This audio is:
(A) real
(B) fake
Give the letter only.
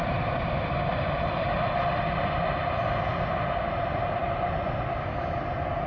A